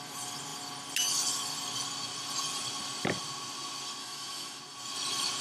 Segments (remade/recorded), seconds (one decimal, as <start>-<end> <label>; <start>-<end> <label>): 0.0-4.0 recorded; 4.0-4.6 remade; 4.6-5.4 recorded